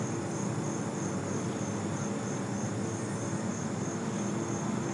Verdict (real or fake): real